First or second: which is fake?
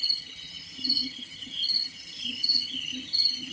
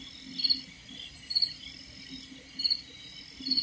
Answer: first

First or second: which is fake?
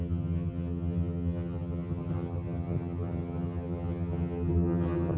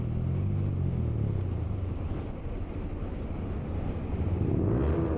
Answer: first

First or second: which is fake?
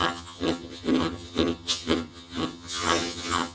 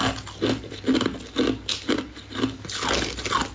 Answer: first